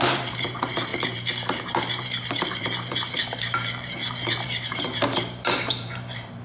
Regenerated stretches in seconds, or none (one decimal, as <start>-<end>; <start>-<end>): 0.0-0.9; 1.6-6.4

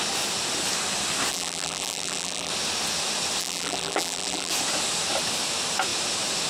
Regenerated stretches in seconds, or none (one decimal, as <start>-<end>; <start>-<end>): 1.3-2.5; 3.4-4.5